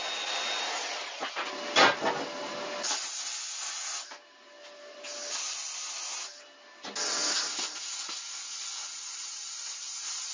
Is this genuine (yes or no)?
yes